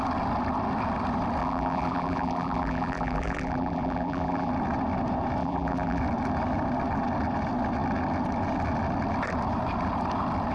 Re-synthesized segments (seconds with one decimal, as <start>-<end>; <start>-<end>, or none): 1.4-4.5; 5.4-6.0